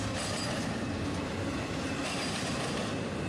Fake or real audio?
fake